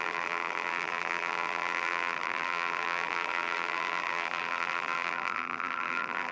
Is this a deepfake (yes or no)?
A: yes